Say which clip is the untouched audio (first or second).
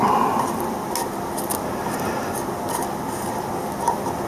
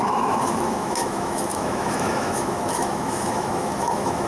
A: first